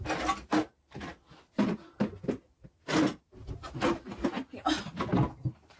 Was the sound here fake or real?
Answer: real